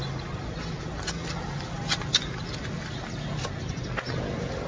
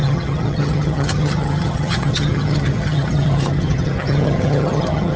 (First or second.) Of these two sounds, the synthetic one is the second